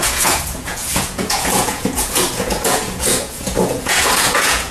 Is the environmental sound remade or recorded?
remade